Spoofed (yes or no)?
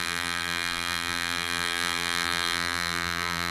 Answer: yes